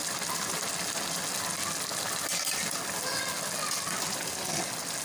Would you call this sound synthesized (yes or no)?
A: no